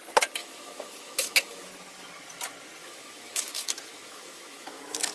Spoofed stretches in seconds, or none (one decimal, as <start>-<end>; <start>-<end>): 0.4-1.7; 2.8-5.1